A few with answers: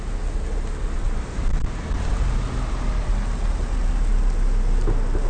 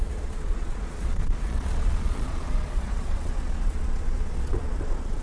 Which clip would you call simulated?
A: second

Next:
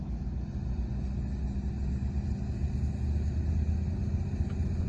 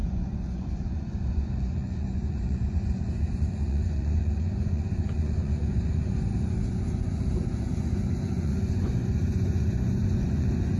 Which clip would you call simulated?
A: second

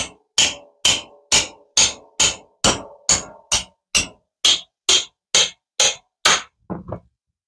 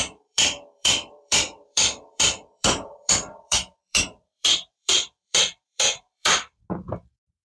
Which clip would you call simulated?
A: second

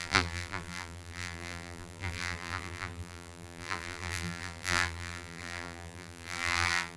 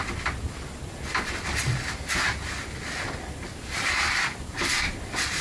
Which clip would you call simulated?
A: first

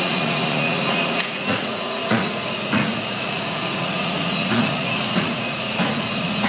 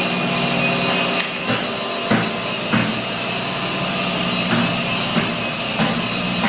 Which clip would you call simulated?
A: first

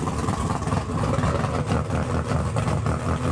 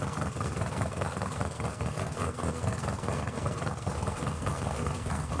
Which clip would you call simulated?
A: second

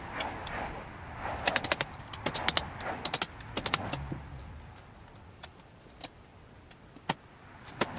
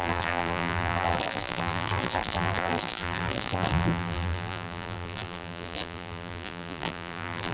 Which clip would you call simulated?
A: second